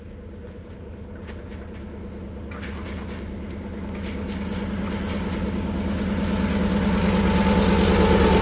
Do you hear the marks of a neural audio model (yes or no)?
no